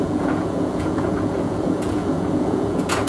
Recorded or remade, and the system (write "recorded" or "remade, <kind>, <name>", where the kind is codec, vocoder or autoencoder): remade, vocoder, Vocos